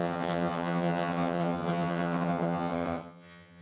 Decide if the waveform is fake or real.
fake